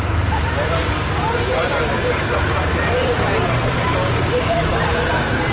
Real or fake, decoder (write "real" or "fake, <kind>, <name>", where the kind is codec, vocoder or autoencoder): fake, vocoder, BigVGAN v2